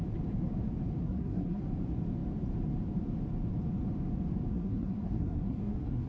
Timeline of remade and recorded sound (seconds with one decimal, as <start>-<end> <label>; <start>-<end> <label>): 0.0-1.0 recorded; 1.0-1.6 remade; 1.6-4.5 recorded; 4.5-6.1 remade